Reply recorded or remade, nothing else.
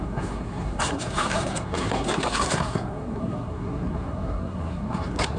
remade